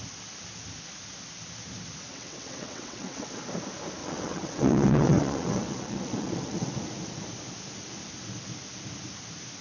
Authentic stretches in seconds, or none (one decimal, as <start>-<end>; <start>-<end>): 0.0-2.1; 3.4-4.0; 6.7-9.6